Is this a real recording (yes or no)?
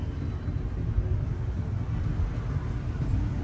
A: yes